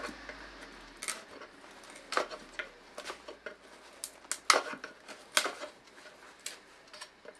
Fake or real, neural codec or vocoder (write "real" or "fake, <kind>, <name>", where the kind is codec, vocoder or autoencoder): real